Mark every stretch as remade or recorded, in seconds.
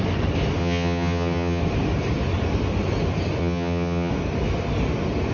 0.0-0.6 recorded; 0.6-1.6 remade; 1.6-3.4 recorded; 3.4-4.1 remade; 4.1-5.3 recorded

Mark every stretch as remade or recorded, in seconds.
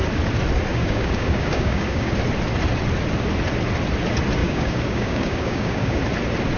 0.0-0.7 recorded; 0.7-2.1 remade; 2.1-4.4 recorded; 4.4-6.0 remade; 6.0-6.6 recorded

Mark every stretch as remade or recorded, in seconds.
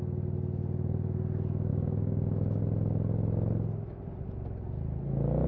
0.0-1.7 recorded; 1.7-2.6 remade; 2.6-5.5 recorded